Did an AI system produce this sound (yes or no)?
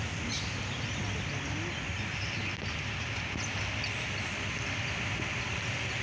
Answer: no